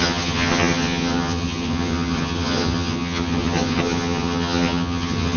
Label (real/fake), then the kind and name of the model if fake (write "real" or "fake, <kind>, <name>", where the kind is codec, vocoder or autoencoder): fake, vocoder, HiFi-GAN